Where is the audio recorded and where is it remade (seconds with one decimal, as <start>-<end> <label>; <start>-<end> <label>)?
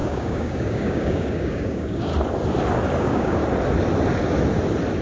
0.0-2.1 remade; 2.1-3.0 recorded; 3.0-3.4 remade; 3.4-5.0 recorded